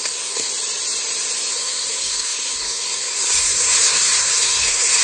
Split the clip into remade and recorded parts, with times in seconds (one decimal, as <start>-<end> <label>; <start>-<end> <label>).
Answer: 0.0-0.5 remade; 0.5-1.5 recorded; 1.5-5.0 remade